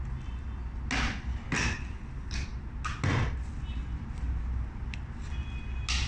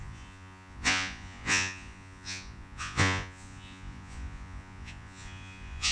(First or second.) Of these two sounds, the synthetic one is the second